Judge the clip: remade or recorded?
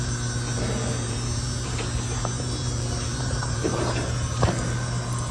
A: remade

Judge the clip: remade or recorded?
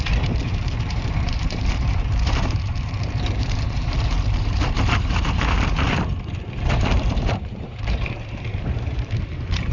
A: remade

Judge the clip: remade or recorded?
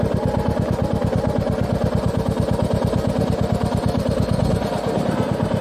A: recorded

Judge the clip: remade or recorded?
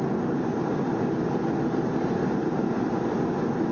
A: recorded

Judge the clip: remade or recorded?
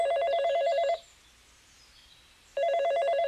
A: recorded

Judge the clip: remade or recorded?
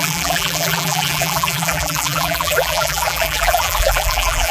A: remade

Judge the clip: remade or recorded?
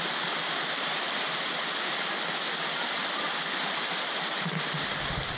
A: recorded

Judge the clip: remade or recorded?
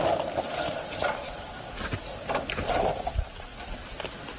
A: recorded